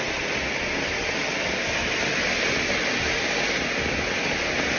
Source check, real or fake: real